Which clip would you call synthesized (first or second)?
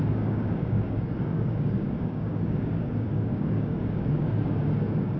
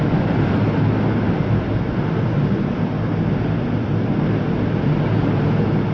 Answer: first